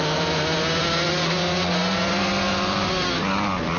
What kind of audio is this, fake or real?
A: real